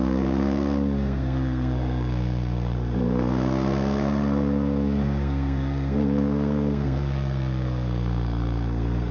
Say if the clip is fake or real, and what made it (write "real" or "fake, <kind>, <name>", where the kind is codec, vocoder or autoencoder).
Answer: fake, codec, SNAC